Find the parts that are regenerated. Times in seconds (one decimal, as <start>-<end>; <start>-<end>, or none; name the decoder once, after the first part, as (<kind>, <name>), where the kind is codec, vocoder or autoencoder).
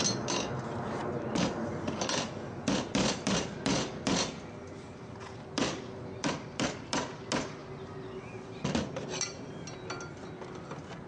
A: none